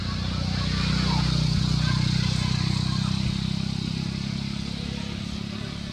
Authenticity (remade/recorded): recorded